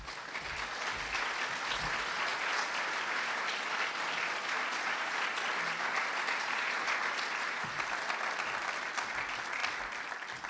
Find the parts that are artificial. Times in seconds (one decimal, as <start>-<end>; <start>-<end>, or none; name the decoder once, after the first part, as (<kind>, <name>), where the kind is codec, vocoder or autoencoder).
2.3-3.3 (vocoder, BigVGAN v2); 9.6-10.5